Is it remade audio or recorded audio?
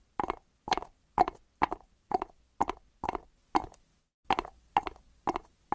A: recorded